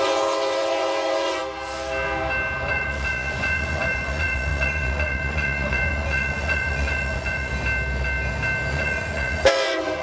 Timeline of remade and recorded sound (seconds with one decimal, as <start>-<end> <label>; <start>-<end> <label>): 0.0-1.4 remade; 1.4-2.7 recorded; 2.7-7.5 remade; 7.5-8.7 recorded; 8.7-10.0 remade